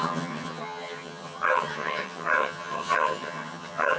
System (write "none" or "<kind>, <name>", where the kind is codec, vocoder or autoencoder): vocoder, HiFi-GAN